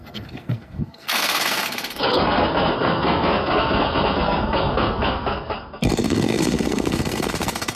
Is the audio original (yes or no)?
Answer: no